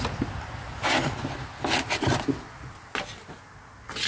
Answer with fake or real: real